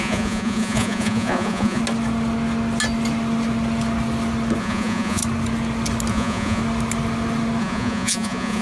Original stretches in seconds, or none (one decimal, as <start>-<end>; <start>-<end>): 1.8-4.6; 5.2-6.1; 6.6-7.6